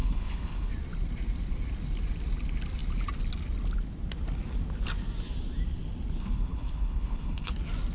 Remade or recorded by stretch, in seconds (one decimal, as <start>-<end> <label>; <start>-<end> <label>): 0.0-0.7 remade; 0.7-6.2 recorded; 6.2-7.5 remade; 7.5-7.9 recorded

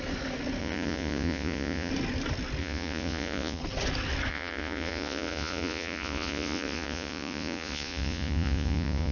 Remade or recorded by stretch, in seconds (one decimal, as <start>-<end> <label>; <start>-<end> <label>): 0.0-0.6 recorded; 0.6-1.9 remade; 1.9-2.6 recorded; 2.6-3.6 remade; 3.6-4.3 recorded; 4.3-9.1 remade

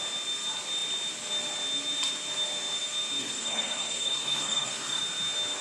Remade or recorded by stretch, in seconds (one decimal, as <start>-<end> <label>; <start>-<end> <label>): 0.0-3.2 recorded; 3.2-5.0 remade; 5.0-5.6 recorded

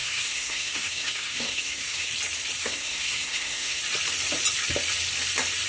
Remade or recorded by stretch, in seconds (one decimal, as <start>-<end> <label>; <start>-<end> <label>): 0.0-2.1 remade; 2.1-2.6 recorded; 2.6-3.8 remade; 3.8-5.7 recorded

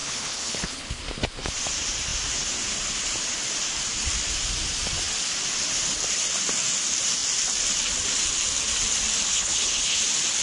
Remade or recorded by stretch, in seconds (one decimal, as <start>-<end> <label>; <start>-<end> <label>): 0.0-1.0 remade; 1.0-9.3 recorded; 9.3-10.0 remade; 10.0-10.4 recorded

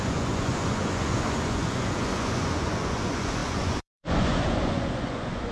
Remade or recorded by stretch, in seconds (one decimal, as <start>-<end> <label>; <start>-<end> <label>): 0.0-5.5 remade